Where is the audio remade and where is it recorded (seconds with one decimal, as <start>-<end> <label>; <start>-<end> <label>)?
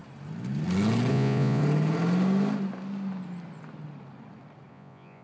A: 0.0-1.1 recorded; 1.1-1.6 remade; 1.6-4.7 recorded; 4.7-5.2 remade